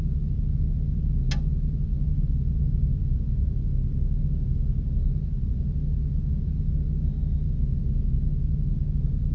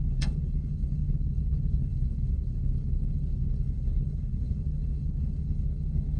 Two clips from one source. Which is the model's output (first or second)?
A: second